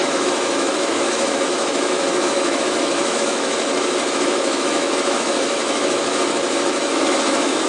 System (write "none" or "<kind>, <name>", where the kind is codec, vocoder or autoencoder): autoencoder, DAC-VAE